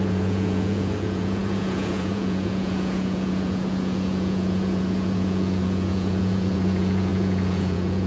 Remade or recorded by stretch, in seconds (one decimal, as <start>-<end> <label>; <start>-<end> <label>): 0.0-8.1 remade